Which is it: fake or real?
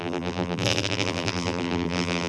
fake